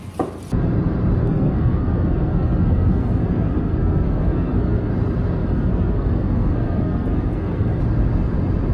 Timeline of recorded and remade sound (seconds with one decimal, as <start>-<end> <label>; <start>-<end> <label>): 0.0-1.2 recorded; 1.2-4.9 remade; 4.9-5.4 recorded; 5.4-7.8 remade; 7.8-8.7 recorded

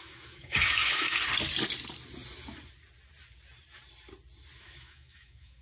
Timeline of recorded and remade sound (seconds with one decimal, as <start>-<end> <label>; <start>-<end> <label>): 0.0-1.2 remade; 1.2-4.6 recorded; 4.6-5.6 remade

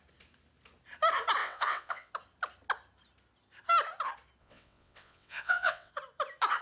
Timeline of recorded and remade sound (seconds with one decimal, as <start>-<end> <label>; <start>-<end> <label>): 0.0-1.4 recorded; 1.4-2.1 remade; 2.1-4.4 recorded; 4.4-5.9 remade; 5.9-6.6 recorded